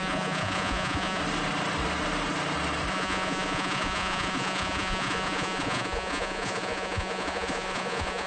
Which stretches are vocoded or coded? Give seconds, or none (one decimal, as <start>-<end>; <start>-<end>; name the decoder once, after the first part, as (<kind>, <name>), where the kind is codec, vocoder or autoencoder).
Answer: 0.0-1.2 (vocoder, Vocos); 2.9-8.3